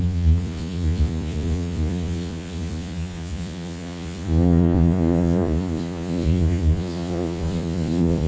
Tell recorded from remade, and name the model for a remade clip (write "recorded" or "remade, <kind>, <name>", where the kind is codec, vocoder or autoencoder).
remade, vocoder, Vocos